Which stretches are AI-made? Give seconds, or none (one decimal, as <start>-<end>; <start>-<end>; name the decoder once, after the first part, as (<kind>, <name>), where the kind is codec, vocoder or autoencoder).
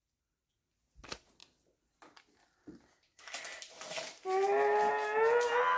none